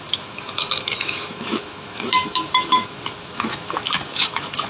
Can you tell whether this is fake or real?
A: fake